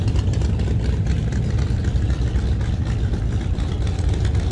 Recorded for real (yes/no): yes